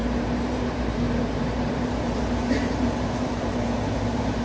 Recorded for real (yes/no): no